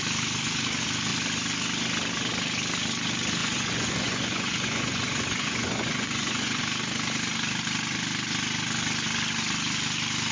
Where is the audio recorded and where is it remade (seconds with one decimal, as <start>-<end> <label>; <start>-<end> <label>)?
0.0-3.4 recorded; 3.4-6.6 remade; 6.6-10.3 recorded